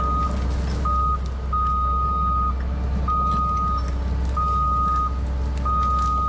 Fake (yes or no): no